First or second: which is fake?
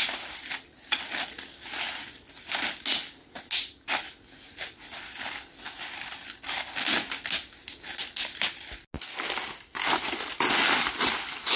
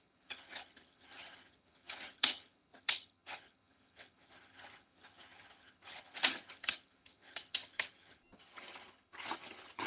second